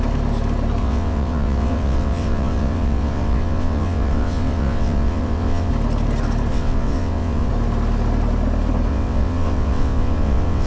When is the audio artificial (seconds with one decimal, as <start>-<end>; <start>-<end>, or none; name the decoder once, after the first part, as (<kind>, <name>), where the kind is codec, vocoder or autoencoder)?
0.8-5.7 (vocoder, WaveNeXt); 6.5-7.5; 8.9-10.7